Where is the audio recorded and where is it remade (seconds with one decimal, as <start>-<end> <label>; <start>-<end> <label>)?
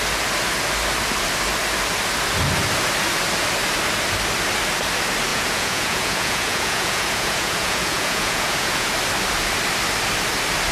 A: 0.0-5.3 recorded; 5.3-8.9 remade; 8.9-10.7 recorded